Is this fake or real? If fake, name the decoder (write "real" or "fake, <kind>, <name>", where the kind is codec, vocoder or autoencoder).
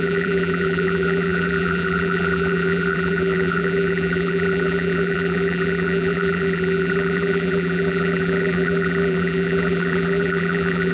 fake, vocoder, BigVGAN v2